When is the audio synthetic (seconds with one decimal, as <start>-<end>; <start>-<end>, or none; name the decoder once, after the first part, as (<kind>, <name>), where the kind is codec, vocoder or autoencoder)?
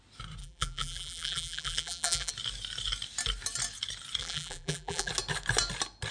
0.4-2.3 (vocoder, BigVGAN v2); 4.2-5.1